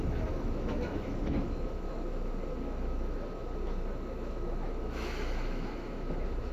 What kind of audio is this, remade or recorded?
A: remade